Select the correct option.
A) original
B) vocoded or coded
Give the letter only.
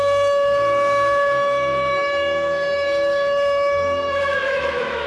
B